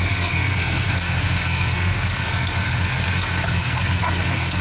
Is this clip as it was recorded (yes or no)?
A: no